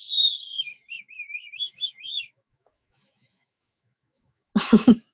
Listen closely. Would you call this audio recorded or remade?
remade